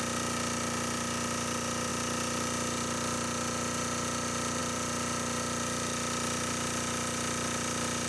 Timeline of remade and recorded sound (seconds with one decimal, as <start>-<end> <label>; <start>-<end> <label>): 0.0-8.1 recorded